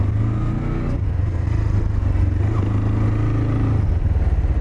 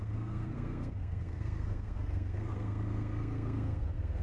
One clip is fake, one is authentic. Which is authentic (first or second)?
first